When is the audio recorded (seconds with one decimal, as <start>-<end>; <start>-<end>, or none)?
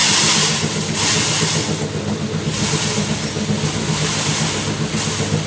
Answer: 0.0-5.5